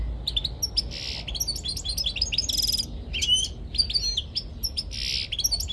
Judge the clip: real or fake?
real